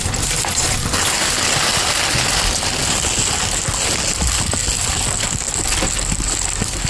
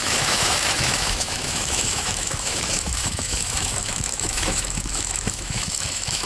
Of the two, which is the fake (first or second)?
second